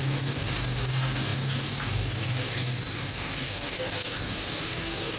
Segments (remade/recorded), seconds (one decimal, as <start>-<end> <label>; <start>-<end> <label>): 0.0-5.2 remade